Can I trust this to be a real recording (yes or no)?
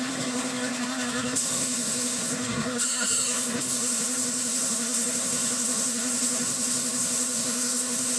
no